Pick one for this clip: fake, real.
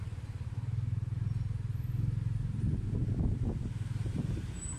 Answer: real